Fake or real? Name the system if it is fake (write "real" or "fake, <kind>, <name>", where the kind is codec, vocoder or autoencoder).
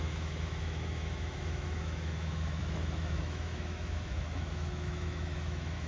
fake, autoencoder, DAC-VAE